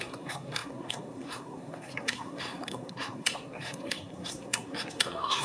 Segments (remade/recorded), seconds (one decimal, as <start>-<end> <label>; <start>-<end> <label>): 0.0-5.4 remade